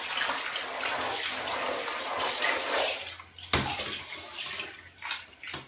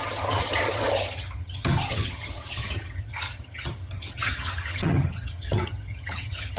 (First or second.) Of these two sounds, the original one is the first